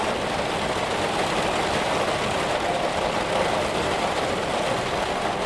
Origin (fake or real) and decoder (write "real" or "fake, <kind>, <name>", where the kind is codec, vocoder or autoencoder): real